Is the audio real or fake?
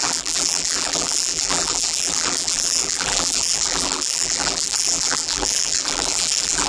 fake